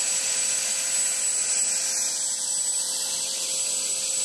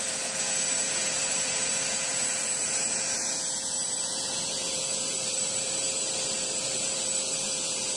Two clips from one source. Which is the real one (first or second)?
first